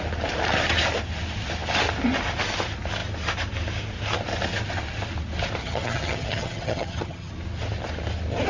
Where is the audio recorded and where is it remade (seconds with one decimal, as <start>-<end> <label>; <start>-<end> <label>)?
0.0-5.6 recorded; 5.6-7.3 remade; 7.3-8.5 recorded